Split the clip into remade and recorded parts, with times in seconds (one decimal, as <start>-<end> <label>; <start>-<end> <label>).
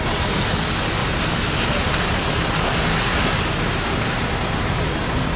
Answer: 0.0-5.4 recorded